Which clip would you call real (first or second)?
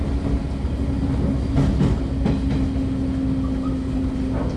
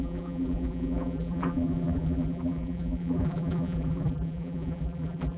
first